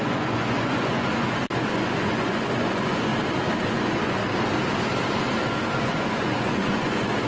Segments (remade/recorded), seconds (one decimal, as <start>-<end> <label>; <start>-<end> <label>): 0.0-3.1 remade; 3.1-3.7 recorded; 3.7-4.2 remade; 4.2-5.8 recorded; 5.8-7.3 remade